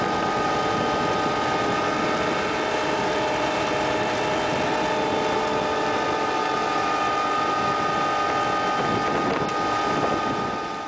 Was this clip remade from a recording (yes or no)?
no